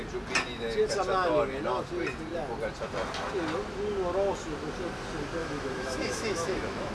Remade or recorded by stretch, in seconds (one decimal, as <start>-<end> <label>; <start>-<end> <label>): 0.0-5.4 recorded; 5.4-6.9 remade